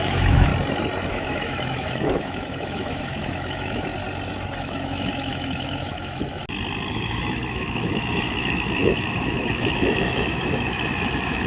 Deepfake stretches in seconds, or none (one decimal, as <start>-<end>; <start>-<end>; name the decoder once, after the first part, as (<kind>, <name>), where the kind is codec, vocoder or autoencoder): 0.0-0.5 (autoencoder, DAC-VAE); 1.1-3.9; 4.6-6.4; 6.9-11.5